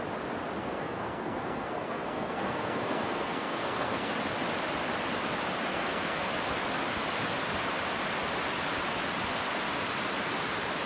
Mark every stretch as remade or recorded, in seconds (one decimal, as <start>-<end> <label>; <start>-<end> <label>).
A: 0.0-0.6 recorded; 0.6-4.1 remade; 4.1-5.7 recorded; 5.7-6.3 remade; 6.3-10.9 recorded